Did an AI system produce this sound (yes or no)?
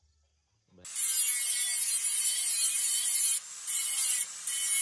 no